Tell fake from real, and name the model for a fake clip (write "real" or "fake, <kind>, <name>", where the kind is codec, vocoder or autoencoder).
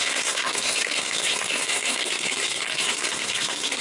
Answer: fake, codec, SNAC